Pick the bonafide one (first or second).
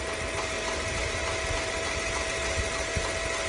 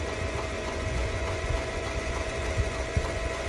first